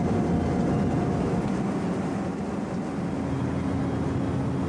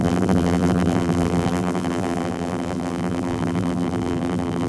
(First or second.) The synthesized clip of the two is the second